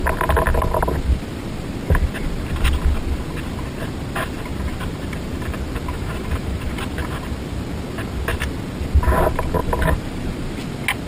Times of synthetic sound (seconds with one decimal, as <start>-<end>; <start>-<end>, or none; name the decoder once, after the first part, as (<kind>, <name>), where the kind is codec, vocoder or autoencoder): 4.5-5.6 (vocoder, BigVGAN v2); 6.0-6.7; 9.6-10.6